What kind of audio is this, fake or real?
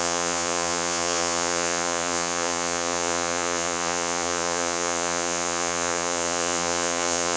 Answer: fake